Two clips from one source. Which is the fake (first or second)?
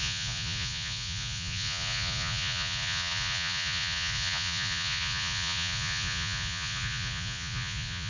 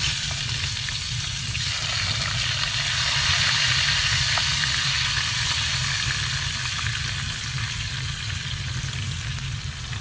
first